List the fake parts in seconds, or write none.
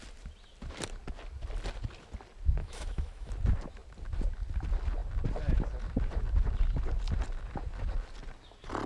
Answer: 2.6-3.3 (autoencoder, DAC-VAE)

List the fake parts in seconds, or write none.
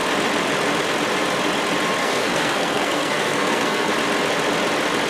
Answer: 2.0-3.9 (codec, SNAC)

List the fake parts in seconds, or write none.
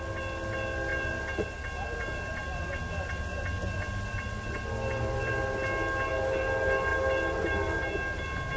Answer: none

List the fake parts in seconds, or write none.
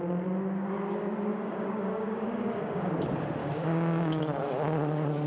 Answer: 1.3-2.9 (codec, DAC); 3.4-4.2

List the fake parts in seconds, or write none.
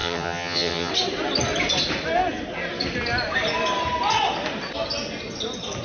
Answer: 0.0-0.9 (vocoder, HiFi-GAN)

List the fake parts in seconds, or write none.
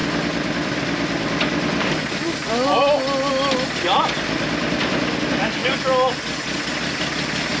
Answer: none